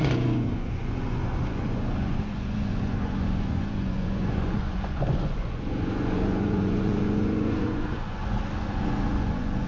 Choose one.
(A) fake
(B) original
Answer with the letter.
A